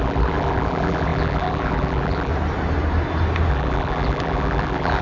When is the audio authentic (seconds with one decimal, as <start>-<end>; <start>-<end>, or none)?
2.3-3.5